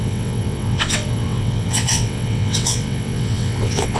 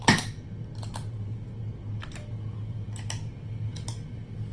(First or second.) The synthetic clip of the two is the first